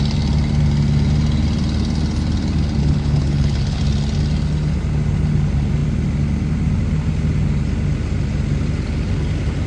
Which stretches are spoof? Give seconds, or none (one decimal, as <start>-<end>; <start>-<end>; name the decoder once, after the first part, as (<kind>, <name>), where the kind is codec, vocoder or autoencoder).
2.8-3.8 (codec, HILCodec)